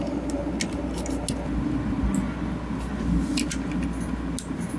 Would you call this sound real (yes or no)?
yes